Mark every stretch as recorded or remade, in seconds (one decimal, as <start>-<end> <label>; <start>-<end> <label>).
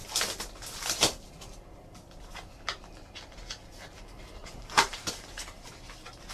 0.0-4.4 recorded; 4.4-5.1 remade; 5.1-6.3 recorded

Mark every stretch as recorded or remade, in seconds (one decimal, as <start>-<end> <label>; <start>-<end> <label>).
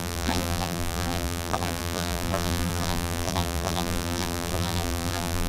0.0-5.5 remade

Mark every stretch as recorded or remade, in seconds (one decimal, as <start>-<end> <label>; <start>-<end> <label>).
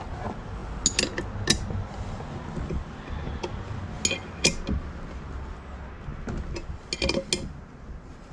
0.0-8.3 recorded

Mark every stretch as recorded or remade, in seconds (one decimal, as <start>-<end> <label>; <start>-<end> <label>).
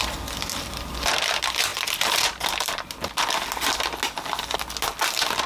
0.0-5.5 recorded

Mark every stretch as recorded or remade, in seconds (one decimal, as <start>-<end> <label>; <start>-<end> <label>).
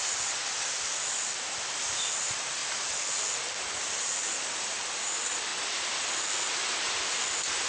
0.0-2.6 remade; 2.6-5.0 recorded; 5.0-5.5 remade; 5.5-7.7 recorded